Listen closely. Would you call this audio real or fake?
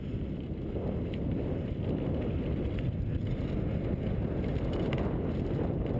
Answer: real